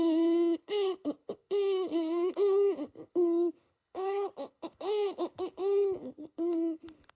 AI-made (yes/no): yes